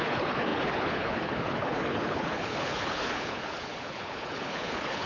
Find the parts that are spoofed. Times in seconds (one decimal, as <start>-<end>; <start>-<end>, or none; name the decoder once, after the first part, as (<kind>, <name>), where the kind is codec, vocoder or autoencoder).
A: 0.0-5.1 (codec, HILCodec)

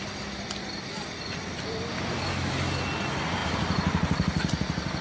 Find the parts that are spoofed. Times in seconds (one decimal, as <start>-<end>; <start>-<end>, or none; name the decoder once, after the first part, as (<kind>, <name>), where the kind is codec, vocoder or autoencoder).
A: none